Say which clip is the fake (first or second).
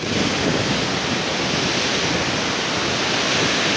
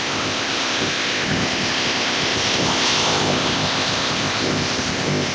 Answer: second